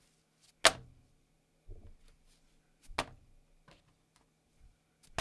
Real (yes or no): yes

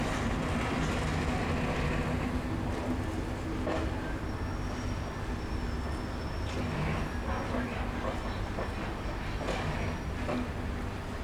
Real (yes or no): yes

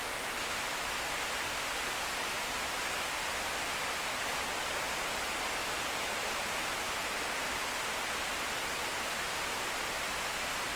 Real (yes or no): yes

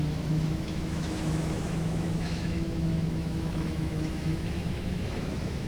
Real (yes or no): no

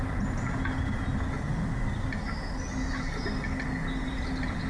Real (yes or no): yes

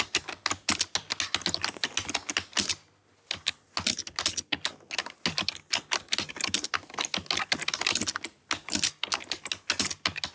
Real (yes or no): yes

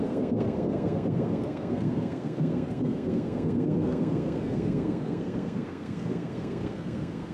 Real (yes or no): no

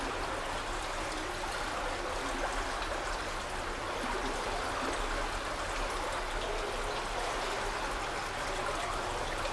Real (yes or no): yes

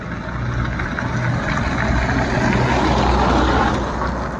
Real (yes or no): yes